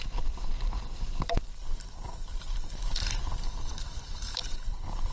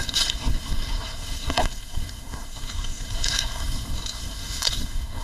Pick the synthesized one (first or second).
second